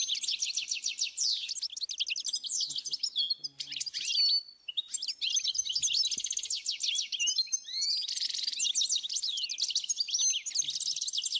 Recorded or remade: recorded